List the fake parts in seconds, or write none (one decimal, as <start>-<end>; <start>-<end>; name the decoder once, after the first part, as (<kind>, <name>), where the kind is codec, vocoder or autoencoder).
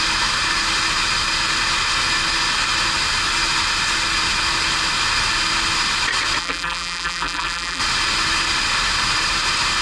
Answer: 6.4-7.8 (vocoder, BigVGAN v2)